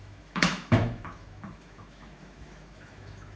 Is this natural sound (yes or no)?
no